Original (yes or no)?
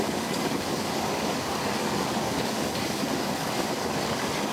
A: no